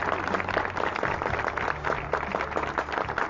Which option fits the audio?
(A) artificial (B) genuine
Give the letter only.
B